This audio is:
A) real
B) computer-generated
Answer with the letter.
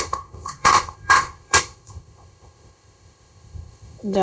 B